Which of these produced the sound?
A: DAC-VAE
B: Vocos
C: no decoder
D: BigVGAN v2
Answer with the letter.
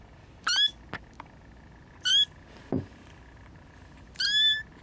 C